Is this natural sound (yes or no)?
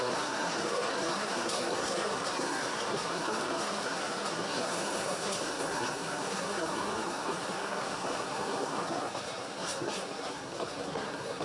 no